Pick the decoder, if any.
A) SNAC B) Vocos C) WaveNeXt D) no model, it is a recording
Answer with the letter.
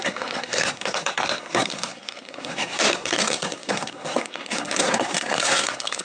A